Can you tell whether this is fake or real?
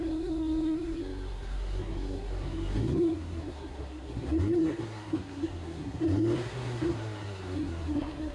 fake